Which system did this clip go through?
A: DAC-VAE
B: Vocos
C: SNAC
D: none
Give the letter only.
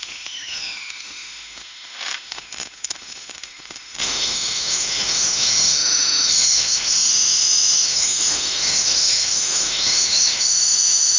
A